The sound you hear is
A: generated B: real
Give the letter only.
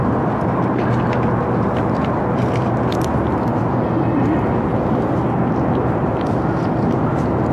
B